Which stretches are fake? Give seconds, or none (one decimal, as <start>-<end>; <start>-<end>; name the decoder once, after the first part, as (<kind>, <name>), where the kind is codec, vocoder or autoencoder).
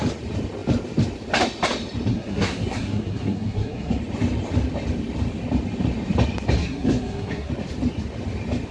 2.1-4.0 (codec, SNAC); 6.6-7.5